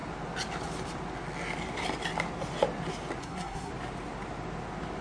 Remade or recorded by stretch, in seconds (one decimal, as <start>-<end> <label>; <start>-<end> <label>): 0.0-3.2 recorded; 3.2-3.7 remade; 3.7-5.0 recorded